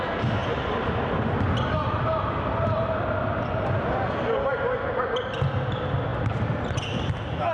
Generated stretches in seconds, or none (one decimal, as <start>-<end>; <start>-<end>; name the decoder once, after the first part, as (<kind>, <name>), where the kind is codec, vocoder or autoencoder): 0.4-4.1 (vocoder, BigVGAN v2)